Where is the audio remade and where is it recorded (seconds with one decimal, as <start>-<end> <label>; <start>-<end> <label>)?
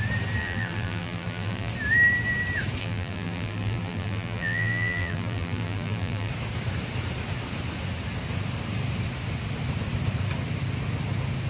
0.0-0.4 recorded; 0.4-1.7 remade; 1.7-2.8 recorded; 2.8-6.3 remade; 6.3-11.5 recorded